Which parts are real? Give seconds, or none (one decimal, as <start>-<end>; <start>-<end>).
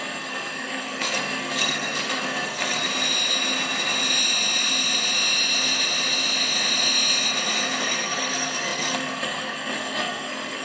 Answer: 2.9-7.8